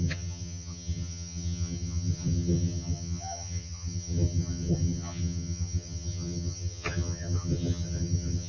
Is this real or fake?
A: fake